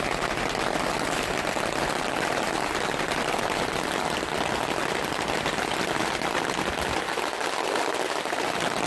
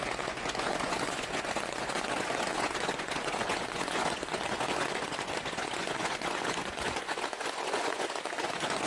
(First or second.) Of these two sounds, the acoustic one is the first